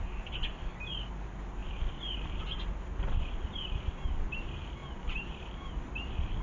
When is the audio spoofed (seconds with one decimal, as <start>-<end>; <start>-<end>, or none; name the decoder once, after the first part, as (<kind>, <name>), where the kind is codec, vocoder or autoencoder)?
4.8-5.4 (vocoder, BigVGAN v2)